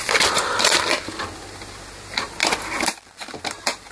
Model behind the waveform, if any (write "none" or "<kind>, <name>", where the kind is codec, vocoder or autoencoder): none